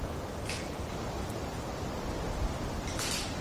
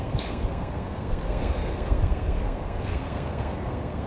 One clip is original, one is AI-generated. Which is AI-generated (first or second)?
second